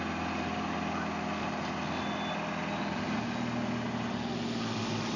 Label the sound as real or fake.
real